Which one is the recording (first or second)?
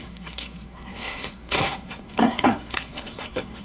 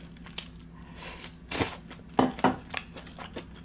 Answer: second